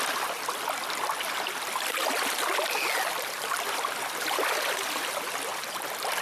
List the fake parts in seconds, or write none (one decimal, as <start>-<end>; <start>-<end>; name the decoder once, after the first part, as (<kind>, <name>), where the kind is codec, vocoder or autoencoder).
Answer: none